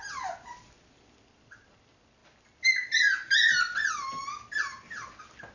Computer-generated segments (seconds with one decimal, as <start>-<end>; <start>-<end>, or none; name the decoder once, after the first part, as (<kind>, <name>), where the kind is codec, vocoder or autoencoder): none